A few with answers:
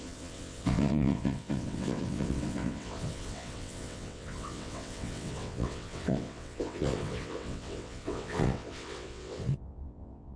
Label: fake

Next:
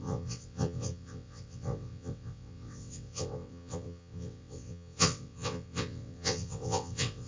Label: fake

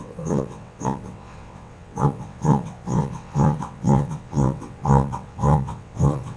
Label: fake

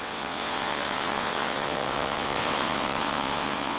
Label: fake